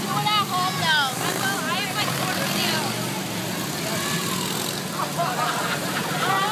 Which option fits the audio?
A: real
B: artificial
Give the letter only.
A